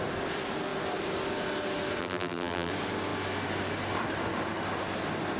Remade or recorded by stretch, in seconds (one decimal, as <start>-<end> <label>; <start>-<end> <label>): 0.0-2.0 recorded; 2.0-2.7 remade; 2.7-5.4 recorded

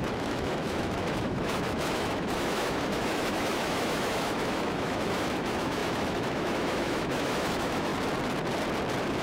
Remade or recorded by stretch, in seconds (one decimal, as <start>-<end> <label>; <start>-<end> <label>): 0.0-7.9 remade; 7.9-9.2 recorded

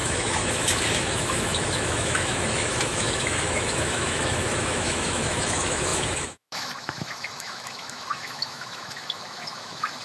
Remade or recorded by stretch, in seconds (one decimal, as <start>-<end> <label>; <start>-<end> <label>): 0.0-10.0 remade

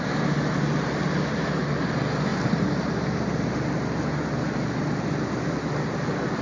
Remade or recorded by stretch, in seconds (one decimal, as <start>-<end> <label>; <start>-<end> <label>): 0.0-6.4 recorded

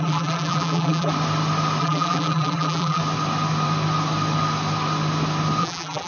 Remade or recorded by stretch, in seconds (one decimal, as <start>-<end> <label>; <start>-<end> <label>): 0.0-1.1 remade; 1.1-1.8 recorded; 1.8-3.0 remade; 3.0-5.6 recorded; 5.6-6.1 remade

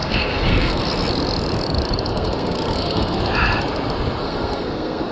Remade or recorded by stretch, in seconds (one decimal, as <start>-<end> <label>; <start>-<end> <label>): 0.0-0.8 remade; 0.8-2.1 recorded; 2.1-3.2 remade; 3.2-4.2 recorded; 4.2-5.1 remade

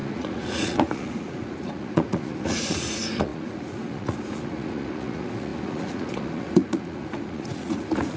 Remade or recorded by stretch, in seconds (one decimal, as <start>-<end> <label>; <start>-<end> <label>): 0.0-8.2 remade